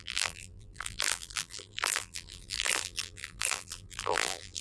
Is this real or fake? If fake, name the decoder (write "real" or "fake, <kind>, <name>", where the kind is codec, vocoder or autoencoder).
fake, vocoder, BigVGAN v2